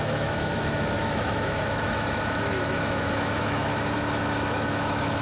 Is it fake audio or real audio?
fake